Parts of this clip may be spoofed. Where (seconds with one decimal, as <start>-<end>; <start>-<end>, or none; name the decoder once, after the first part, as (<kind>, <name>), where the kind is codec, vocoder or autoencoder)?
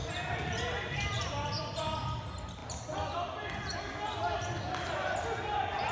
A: 0.0-1.3 (vocoder, BigVGAN v2)